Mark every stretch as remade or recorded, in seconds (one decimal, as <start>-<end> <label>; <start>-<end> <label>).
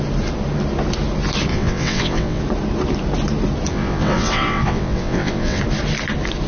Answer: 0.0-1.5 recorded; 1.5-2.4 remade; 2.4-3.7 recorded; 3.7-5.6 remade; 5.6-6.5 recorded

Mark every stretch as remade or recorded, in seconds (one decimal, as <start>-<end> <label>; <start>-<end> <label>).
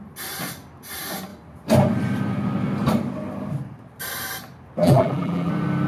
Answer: 0.0-4.8 recorded; 4.8-5.5 remade; 5.5-5.9 recorded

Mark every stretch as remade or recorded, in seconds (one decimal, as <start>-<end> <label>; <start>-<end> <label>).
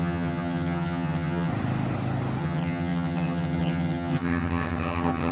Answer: 0.0-1.5 remade; 1.5-2.4 recorded; 2.4-5.3 remade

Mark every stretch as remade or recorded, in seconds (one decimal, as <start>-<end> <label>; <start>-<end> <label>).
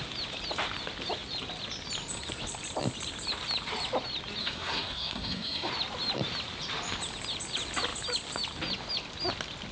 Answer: 0.0-4.4 recorded; 4.4-5.7 remade; 5.7-9.7 recorded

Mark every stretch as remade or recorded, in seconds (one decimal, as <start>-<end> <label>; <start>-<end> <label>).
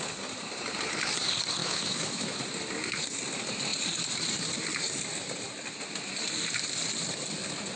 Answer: 0.0-1.6 recorded; 1.6-2.4 remade; 2.4-7.8 recorded